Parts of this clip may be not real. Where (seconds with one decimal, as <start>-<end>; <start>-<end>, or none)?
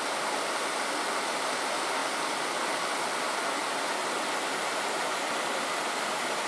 none